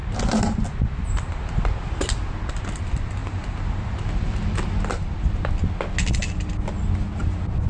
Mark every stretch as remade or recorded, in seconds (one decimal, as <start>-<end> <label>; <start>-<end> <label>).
0.0-7.7 recorded